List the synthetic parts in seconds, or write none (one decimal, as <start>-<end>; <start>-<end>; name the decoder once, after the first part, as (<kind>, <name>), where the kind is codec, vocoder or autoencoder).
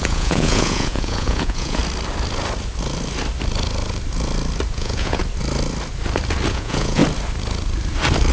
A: 0.0-1.8 (vocoder, Vocos); 4.7-5.2; 6.5-7.0